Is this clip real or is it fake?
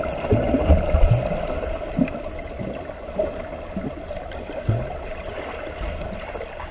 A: real